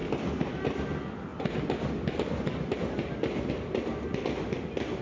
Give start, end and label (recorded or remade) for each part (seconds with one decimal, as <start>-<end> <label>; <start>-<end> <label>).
0.0-5.0 recorded